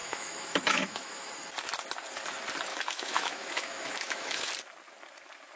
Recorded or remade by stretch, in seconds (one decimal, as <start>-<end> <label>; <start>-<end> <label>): 0.0-1.3 remade; 1.3-2.7 recorded; 2.7-4.5 remade; 4.5-5.6 recorded